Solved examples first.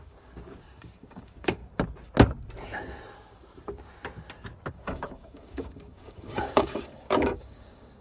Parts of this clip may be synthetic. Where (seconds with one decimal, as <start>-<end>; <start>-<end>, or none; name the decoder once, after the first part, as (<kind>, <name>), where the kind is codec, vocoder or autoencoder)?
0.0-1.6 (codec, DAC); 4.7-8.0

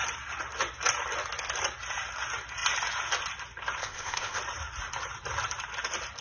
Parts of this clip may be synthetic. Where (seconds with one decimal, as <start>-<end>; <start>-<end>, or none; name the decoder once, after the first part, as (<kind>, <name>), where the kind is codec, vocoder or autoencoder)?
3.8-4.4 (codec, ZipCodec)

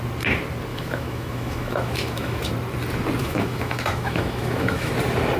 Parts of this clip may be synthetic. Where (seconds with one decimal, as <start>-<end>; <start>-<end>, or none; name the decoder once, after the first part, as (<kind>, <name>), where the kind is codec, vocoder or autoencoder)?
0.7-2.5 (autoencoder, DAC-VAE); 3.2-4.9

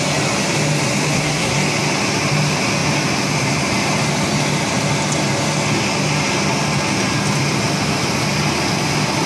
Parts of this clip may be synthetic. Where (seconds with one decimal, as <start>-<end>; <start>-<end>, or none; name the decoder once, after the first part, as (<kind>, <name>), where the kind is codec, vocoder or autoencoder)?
1.1-1.6 (codec, SNAC)

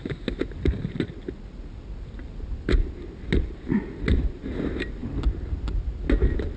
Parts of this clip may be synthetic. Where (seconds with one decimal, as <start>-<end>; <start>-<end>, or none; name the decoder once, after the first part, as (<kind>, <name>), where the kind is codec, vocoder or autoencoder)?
none

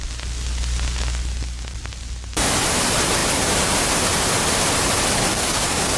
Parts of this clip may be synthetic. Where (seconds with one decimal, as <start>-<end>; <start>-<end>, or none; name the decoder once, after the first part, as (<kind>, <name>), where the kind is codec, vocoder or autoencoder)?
5.3-6.0 (codec, DAC)

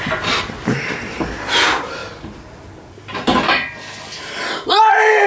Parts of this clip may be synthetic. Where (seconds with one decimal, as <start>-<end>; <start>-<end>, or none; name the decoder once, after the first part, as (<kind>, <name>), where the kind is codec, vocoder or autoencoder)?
none

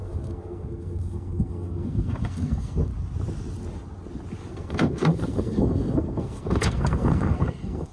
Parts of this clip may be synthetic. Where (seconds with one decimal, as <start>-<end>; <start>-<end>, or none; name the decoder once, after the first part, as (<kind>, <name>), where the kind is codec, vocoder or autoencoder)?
0.0-2.9 (codec, SNAC); 4.5-7.9